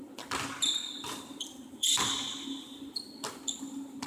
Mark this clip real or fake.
fake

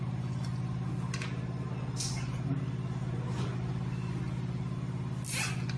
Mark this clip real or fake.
real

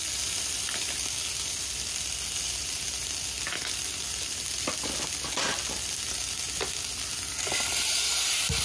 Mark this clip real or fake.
real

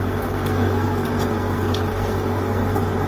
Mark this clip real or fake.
fake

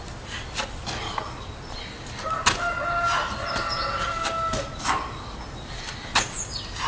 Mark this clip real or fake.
real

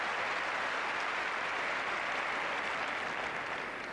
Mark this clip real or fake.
real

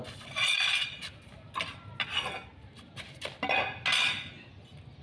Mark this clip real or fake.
real